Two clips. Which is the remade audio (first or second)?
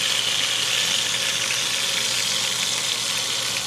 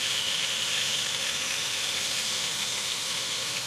second